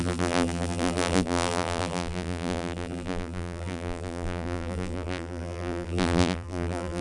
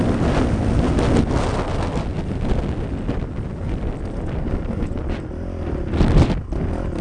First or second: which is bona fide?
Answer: second